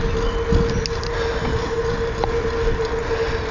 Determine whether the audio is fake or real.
real